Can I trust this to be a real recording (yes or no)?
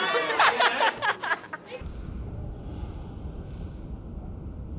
yes